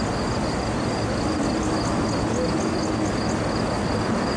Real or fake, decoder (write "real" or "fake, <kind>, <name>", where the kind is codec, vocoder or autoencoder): real